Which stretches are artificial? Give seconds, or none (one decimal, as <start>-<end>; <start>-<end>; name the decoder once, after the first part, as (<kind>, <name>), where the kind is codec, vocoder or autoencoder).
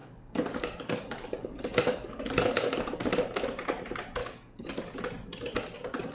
0.0-2.8 (codec, DAC); 4.2-5.0